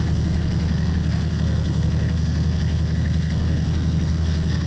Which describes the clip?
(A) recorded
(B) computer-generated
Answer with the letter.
B